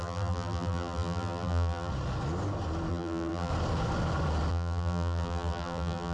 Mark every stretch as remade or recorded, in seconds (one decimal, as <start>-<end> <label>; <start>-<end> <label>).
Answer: 0.0-1.9 remade; 1.9-2.9 recorded; 2.9-3.5 remade; 3.5-4.5 recorded; 4.5-6.1 remade